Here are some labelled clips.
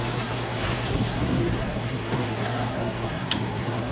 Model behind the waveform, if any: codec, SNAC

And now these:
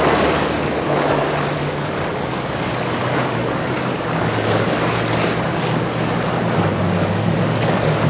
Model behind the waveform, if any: codec, DAC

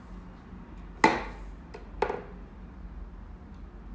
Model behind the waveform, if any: none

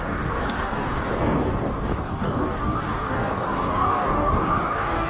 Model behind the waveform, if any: codec, DAC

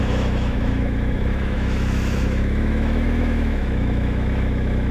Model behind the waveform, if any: autoencoder, DAC-VAE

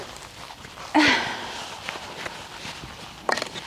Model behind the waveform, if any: none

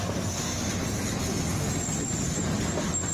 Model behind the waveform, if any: none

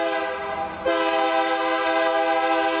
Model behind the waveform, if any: none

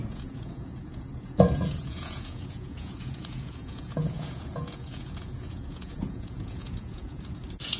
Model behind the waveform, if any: vocoder, Vocos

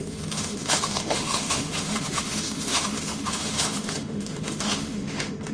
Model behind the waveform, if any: autoencoder, DAC-VAE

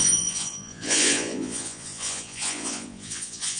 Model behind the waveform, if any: vocoder, Vocos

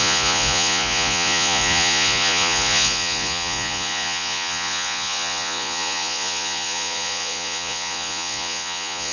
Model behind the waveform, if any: vocoder, Vocos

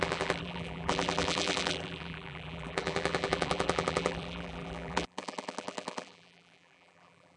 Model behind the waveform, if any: vocoder, BigVGAN v2